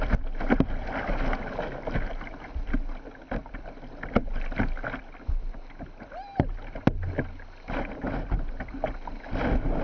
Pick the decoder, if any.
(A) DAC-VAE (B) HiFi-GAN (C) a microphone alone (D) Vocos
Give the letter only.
C